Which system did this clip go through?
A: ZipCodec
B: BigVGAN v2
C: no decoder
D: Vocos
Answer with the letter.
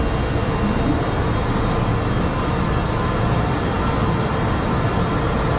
C